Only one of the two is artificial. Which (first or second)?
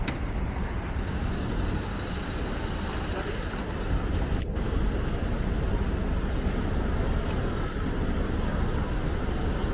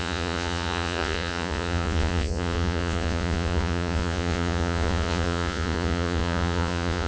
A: second